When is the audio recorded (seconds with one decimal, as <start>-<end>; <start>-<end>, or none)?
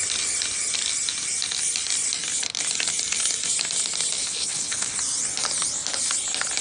0.0-4.2; 5.0-6.6